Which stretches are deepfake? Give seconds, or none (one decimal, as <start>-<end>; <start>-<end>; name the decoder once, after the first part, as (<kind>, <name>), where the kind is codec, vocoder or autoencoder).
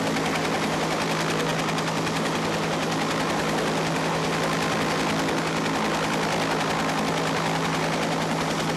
none